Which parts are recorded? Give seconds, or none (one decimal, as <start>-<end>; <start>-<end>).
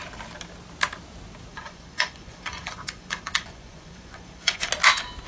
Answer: 0.0-1.5; 4.7-5.3